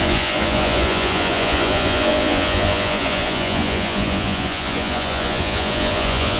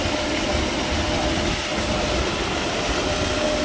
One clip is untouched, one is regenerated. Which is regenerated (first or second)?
first